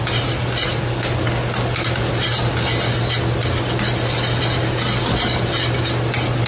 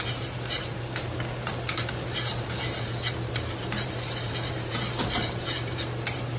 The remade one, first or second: second